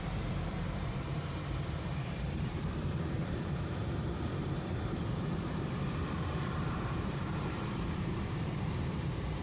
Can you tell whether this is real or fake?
fake